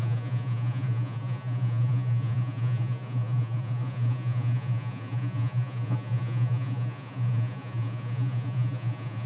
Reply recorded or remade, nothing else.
remade